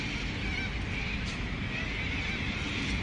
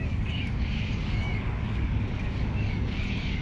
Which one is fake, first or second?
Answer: second